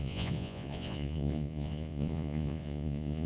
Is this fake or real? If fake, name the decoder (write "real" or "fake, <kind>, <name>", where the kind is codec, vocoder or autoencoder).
fake, vocoder, Vocos